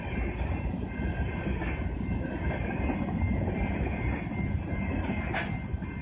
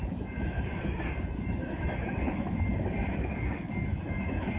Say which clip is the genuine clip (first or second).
first